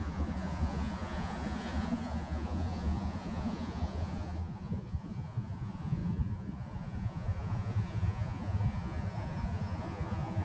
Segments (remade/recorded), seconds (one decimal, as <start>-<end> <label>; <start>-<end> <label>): 0.0-10.4 remade